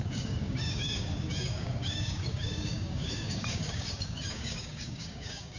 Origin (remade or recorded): remade